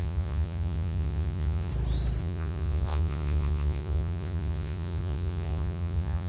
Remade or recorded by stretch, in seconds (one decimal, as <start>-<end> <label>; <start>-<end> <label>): 0.0-1.7 remade; 1.7-2.2 recorded; 2.2-6.3 remade